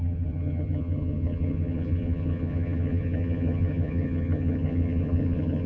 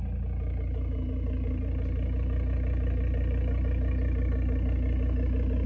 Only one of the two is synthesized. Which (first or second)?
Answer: first